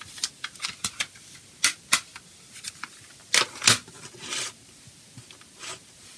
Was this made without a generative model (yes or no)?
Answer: yes